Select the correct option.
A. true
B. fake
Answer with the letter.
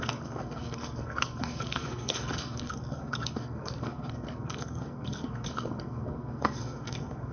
B